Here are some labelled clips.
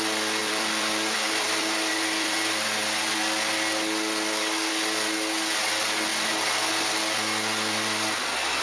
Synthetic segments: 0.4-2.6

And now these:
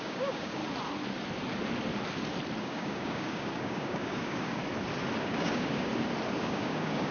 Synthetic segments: 0.0-0.6; 2.6-4.6; 5.2-5.9; 6.4-7.1

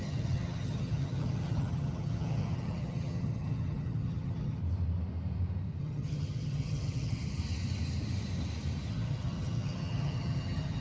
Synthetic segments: 0.0-4.6; 5.8-7.4; 8.9-10.8

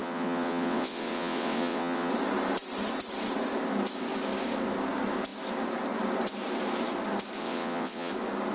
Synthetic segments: 0.0-2.1; 7.4-8.1